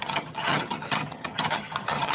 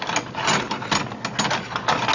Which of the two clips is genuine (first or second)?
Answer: second